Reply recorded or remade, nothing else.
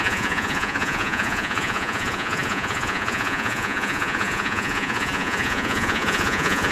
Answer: remade